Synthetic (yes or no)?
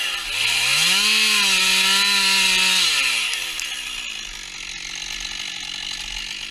no